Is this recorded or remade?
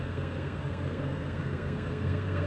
remade